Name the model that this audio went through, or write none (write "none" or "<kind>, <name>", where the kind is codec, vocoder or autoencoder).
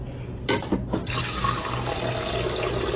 none